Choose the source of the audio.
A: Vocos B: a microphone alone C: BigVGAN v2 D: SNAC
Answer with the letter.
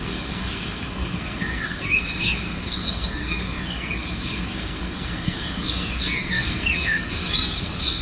D